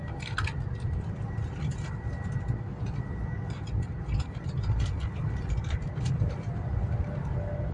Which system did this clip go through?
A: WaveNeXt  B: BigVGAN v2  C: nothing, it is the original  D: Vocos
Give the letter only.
C